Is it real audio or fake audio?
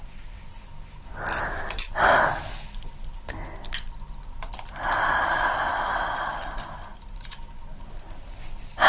real